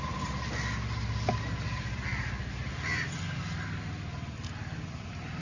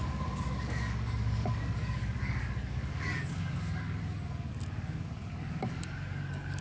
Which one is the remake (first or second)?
second